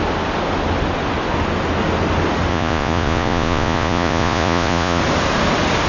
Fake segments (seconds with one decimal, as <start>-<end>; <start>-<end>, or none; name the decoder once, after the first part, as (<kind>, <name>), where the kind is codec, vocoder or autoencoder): 2.5-5.0 (vocoder, Vocos)